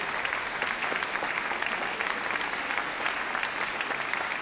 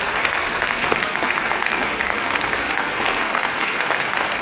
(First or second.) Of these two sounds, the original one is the first